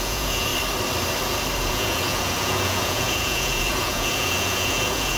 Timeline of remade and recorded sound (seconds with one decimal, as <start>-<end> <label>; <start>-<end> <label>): 0.0-0.5 remade; 0.5-1.6 recorded; 1.6-5.2 remade